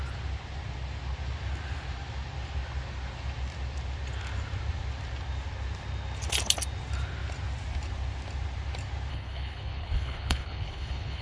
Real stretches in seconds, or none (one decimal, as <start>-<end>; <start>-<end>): 0.0-9.1